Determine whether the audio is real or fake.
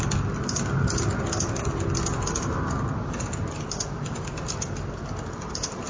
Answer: real